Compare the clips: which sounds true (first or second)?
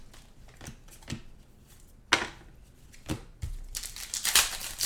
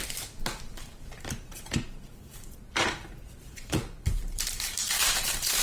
first